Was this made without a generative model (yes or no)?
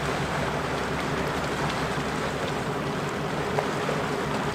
yes